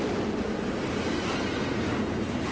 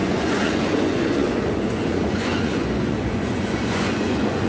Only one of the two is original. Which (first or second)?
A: first